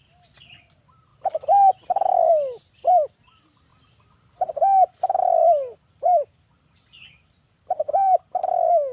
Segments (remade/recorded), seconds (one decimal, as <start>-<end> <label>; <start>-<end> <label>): 0.0-3.7 recorded; 3.7-4.5 remade; 4.5-5.4 recorded; 5.4-8.4 remade; 8.4-8.9 recorded